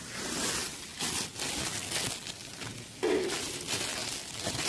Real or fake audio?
real